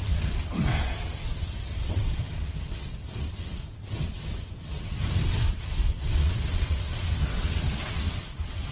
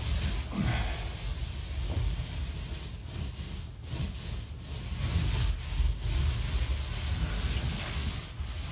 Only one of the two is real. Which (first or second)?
second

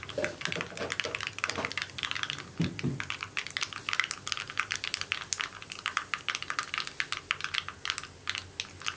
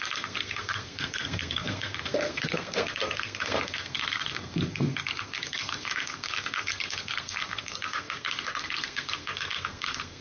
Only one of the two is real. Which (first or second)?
first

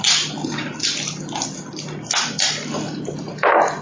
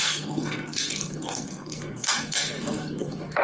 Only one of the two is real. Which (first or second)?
first